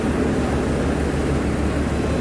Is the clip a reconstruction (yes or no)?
no